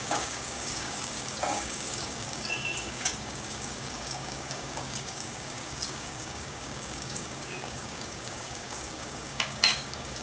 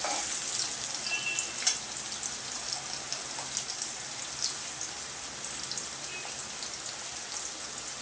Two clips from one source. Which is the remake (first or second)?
first